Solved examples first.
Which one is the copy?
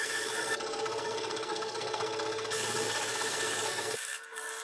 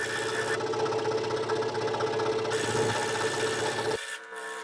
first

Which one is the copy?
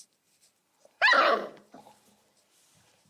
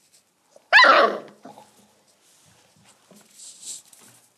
first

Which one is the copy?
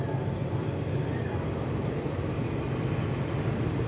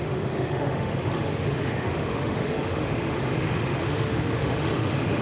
second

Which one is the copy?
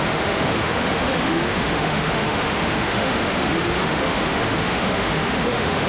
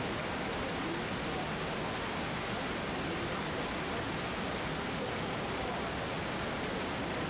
first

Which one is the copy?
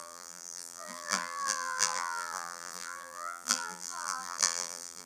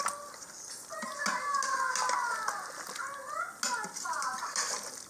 first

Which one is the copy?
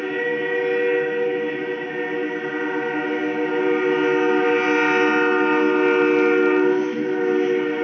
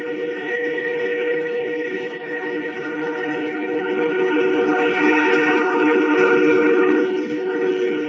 second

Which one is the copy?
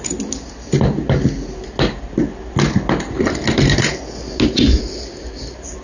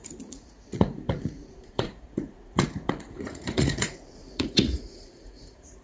second